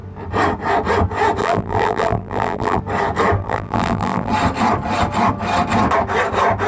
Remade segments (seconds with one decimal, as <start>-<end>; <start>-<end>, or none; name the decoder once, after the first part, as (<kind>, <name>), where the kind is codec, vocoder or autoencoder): 1.4-2.8 (vocoder, BigVGAN v2); 3.4-4.3